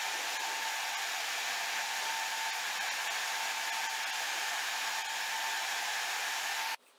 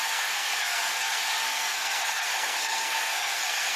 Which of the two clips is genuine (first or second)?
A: first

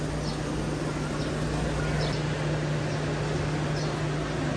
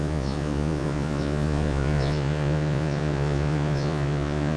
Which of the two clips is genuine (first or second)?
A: first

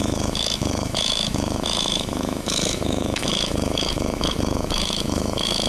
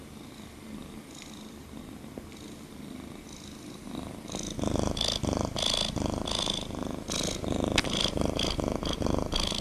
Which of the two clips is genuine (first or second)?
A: second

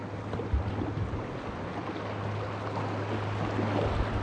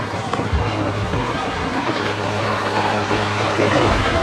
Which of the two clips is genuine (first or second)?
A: first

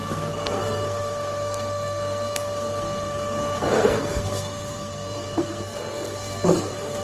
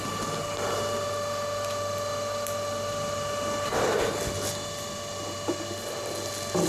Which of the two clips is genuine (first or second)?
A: second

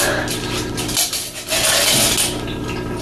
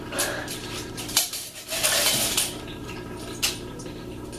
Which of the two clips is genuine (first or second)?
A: first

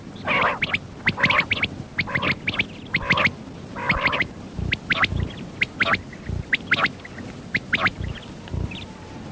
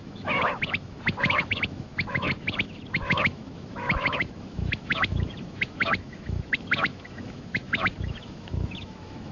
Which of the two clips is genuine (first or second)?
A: first